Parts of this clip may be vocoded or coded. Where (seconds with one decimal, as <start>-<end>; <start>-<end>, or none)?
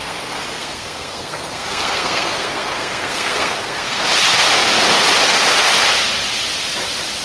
0.0-4.0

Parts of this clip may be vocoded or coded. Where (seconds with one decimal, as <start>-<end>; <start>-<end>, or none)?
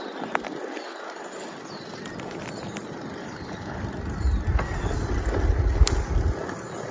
3.2-3.8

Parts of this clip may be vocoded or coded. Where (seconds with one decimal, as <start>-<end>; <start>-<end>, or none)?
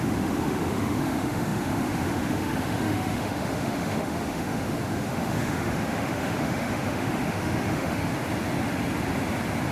0.0-8.1